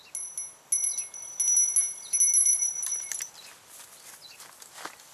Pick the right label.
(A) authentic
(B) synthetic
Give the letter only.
A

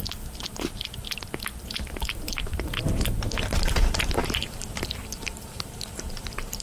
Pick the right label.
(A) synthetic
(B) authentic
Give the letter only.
A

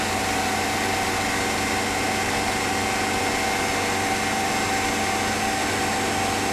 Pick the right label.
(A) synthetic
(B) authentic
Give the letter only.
B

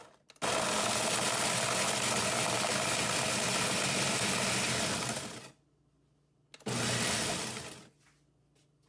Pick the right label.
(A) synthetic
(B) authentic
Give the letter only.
B